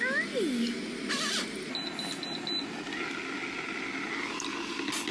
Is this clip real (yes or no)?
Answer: yes